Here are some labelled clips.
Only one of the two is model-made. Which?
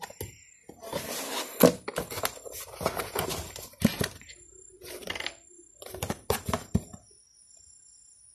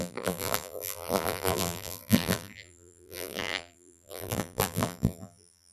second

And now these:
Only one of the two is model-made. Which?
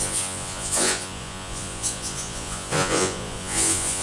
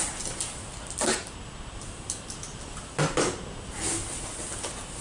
first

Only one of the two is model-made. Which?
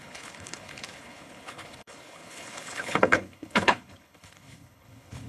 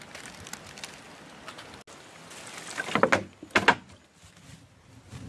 first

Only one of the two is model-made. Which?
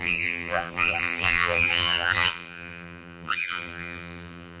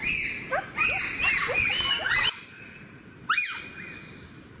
first